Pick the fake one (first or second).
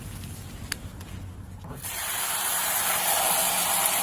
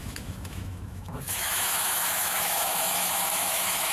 second